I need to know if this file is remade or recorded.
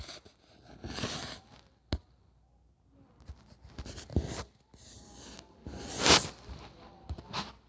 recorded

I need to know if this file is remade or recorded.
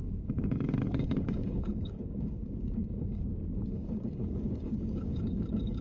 remade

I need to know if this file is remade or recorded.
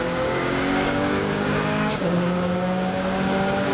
remade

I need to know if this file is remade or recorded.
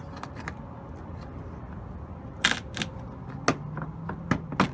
recorded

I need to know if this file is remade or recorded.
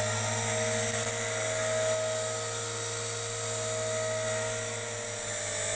recorded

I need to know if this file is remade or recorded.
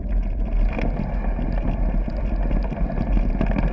recorded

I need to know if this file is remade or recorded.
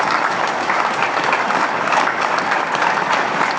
remade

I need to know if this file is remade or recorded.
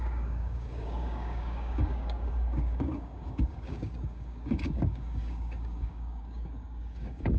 remade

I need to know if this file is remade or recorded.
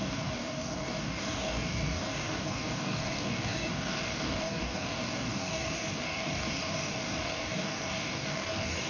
remade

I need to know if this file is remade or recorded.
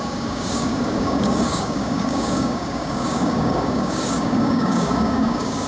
remade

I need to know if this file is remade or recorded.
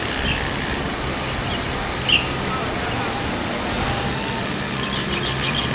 recorded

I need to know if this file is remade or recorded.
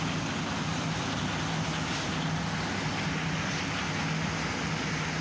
recorded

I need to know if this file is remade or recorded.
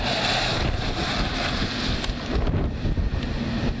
recorded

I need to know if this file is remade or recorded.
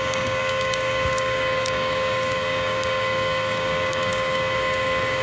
remade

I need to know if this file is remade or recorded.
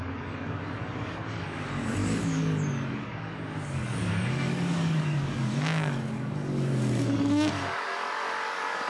remade